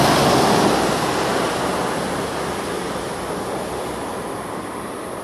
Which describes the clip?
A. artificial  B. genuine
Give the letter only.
B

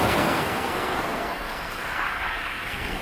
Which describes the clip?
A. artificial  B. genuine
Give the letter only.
A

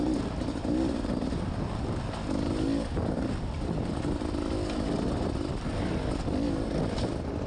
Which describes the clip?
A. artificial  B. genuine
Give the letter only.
B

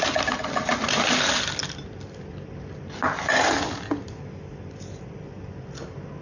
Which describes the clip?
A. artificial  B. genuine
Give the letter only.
B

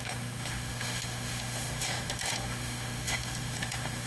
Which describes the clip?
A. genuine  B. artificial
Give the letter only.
B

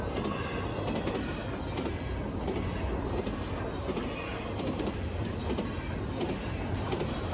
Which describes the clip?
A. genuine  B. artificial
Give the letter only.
A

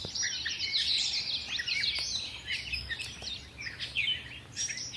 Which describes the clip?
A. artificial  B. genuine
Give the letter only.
B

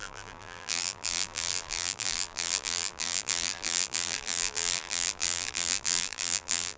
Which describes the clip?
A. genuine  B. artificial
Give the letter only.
B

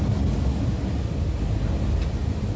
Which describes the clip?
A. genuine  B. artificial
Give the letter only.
A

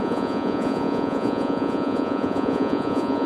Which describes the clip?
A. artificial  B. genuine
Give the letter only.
A